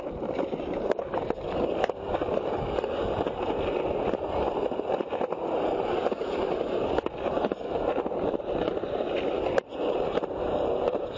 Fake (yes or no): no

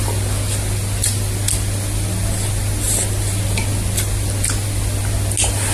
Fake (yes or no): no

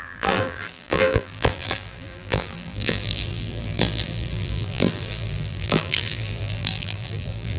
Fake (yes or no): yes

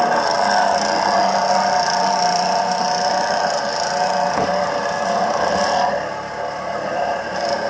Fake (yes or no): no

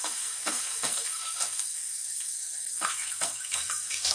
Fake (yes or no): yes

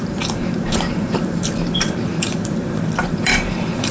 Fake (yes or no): yes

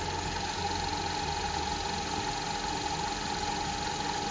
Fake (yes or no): no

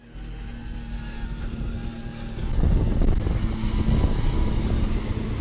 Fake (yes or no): no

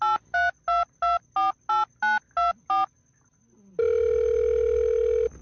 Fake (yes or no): no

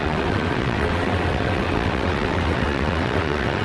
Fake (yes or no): yes